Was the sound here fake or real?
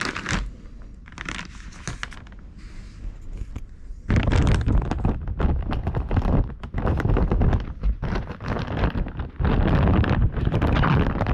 real